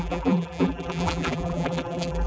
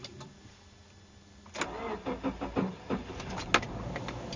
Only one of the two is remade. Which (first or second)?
first